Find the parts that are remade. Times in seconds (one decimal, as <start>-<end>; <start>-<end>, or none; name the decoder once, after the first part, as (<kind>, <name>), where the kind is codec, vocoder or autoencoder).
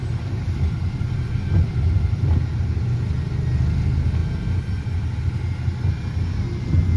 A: 0.0-2.6 (vocoder, BigVGAN v2)